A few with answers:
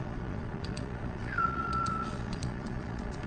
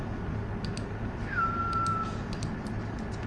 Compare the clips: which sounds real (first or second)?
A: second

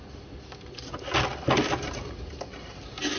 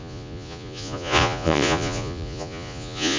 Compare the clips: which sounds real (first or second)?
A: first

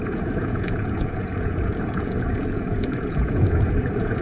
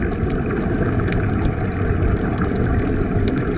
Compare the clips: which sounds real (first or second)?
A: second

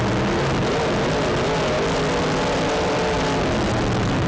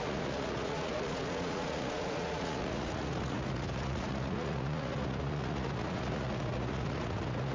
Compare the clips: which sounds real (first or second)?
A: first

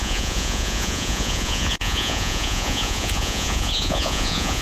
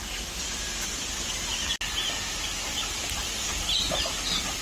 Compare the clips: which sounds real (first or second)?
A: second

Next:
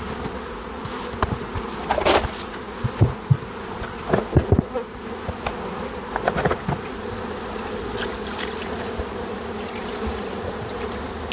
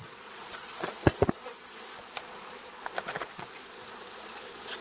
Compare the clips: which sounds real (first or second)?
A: first